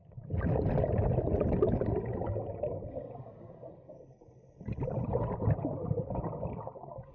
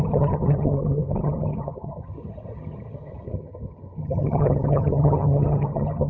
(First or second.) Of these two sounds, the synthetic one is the second